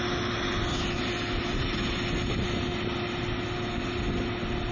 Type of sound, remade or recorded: recorded